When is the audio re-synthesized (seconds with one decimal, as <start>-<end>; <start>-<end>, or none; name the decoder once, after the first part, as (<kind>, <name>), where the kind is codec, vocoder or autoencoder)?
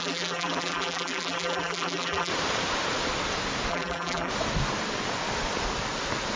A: 0.0-2.3 (vocoder, BigVGAN v2); 3.7-4.3